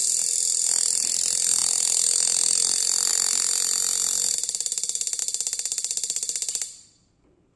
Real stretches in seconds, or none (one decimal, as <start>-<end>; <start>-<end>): 0.0-7.6